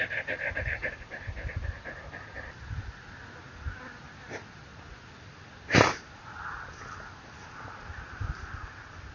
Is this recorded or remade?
recorded